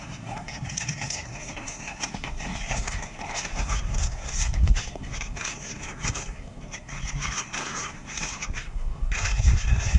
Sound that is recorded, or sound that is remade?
remade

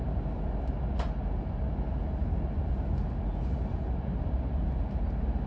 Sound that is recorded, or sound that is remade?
recorded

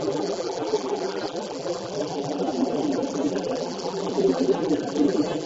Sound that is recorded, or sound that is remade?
remade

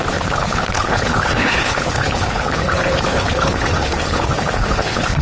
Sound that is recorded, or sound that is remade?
remade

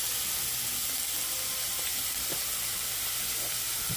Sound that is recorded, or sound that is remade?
recorded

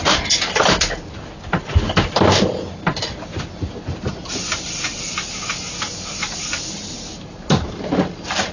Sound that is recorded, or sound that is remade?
recorded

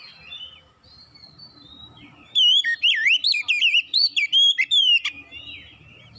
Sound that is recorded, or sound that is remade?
remade